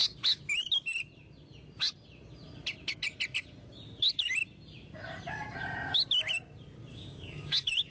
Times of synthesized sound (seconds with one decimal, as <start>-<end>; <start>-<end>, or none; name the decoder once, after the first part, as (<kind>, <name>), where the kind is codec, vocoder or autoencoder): 6.9-7.5 (codec, DAC)